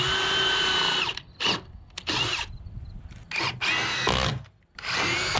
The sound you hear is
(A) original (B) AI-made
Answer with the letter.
A